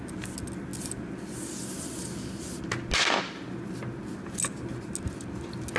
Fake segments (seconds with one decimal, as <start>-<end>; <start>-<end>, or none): none